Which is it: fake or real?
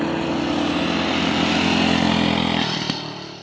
real